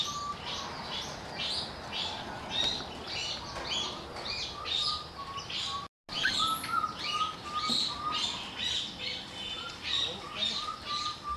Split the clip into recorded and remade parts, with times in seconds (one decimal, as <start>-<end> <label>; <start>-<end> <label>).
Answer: 0.0-11.4 recorded